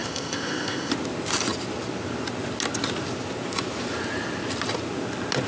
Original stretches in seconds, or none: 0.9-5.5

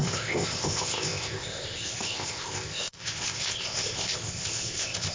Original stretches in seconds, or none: none

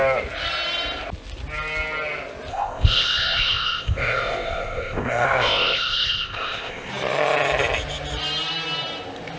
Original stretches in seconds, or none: 0.0-2.5; 6.9-9.4

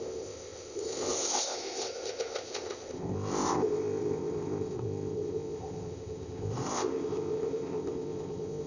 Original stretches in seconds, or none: none

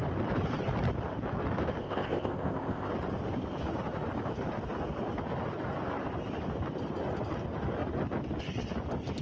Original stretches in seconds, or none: 0.0-1.8; 2.9-9.2

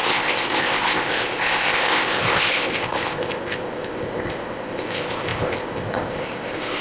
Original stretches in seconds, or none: none

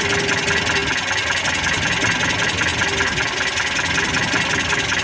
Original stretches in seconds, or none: 0.0-5.0

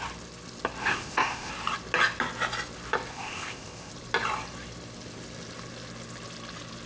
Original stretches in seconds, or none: 0.0-0.8; 1.5-3.1; 3.9-6.9